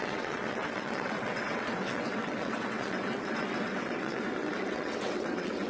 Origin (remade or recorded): remade